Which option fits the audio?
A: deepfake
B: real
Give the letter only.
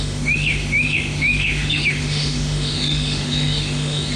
A